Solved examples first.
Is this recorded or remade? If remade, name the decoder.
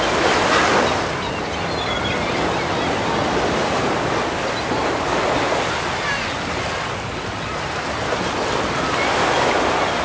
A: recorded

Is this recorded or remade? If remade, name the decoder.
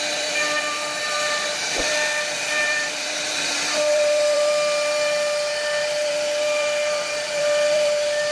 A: remade, vocoder, BigVGAN v2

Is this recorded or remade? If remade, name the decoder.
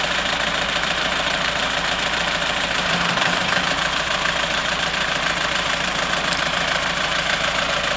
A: remade, vocoder, BigVGAN v2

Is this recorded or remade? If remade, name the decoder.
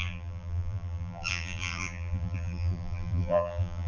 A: remade, vocoder, BigVGAN v2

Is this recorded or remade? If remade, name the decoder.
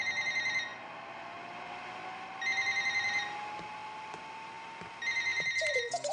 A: recorded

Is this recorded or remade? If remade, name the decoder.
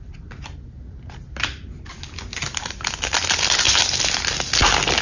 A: recorded